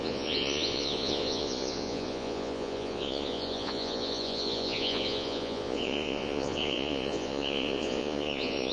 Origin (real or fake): fake